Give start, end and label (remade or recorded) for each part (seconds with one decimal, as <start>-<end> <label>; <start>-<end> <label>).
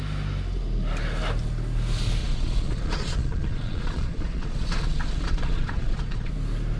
0.0-2.2 recorded; 2.2-6.3 remade; 6.3-6.8 recorded